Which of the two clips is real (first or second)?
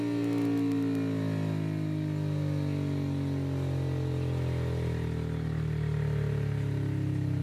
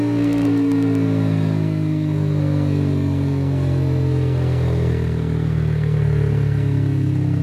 first